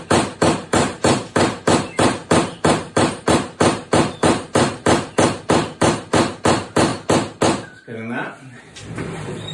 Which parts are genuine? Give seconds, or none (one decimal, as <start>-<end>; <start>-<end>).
6.9-8.6